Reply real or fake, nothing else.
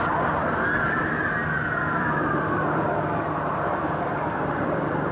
fake